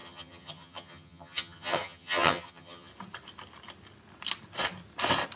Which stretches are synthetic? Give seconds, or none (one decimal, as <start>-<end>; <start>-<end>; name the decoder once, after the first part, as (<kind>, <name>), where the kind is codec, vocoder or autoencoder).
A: 0.0-2.9 (vocoder, HiFi-GAN)